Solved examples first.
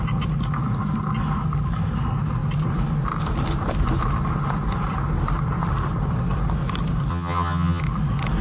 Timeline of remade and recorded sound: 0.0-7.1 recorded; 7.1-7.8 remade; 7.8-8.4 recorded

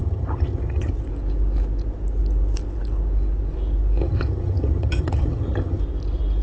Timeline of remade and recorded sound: 0.0-0.9 remade; 0.9-4.0 recorded; 4.0-5.8 remade; 5.8-6.4 recorded

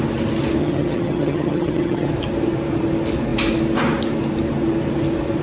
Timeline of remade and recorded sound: 0.0-0.6 recorded; 0.6-2.1 remade; 2.1-5.4 recorded

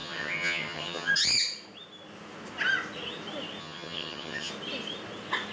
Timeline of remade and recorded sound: 0.0-1.1 remade; 1.1-3.6 recorded; 3.6-4.5 remade; 4.5-5.5 recorded

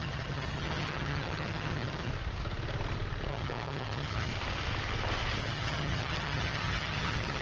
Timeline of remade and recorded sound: 0.0-2.1 remade; 2.1-3.3 recorded; 3.3-4.3 remade; 4.3-5.4 recorded; 5.4-7.4 remade